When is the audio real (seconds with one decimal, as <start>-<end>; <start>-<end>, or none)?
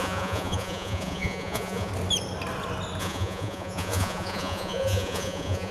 1.9-3.0